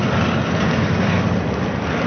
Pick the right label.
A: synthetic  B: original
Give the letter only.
B